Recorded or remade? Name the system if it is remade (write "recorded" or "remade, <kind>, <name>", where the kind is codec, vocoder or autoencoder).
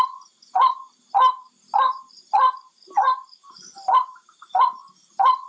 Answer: recorded